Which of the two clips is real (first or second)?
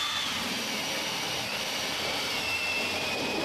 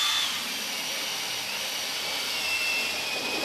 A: second